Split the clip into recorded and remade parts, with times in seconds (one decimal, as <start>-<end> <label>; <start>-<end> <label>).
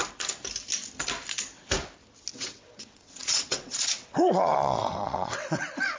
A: 0.0-2.3 recorded; 2.3-6.0 remade